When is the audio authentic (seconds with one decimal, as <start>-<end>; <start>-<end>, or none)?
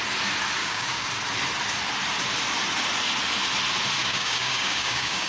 0.0-0.6; 1.1-4.0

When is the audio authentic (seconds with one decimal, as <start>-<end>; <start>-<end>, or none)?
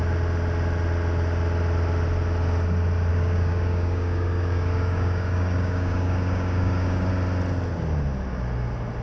0.0-3.1; 7.1-9.0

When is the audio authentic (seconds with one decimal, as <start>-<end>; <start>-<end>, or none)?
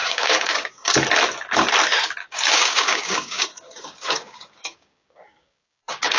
0.9-2.2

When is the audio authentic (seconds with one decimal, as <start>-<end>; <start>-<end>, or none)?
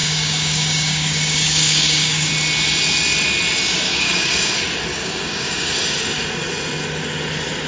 2.3-3.7; 4.5-4.9; 5.7-7.7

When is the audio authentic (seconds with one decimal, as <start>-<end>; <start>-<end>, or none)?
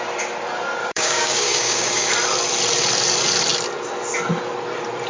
0.0-0.8; 2.1-5.1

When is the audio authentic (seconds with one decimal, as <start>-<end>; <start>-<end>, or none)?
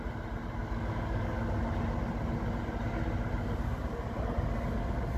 0.0-0.6; 1.4-5.2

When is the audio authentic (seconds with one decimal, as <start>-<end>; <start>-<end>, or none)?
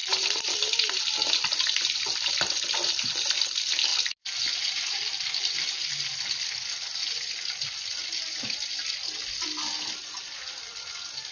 0.0-11.3